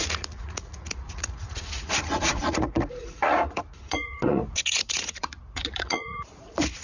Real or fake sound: fake